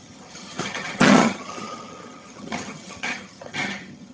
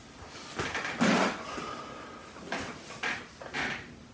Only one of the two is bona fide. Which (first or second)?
second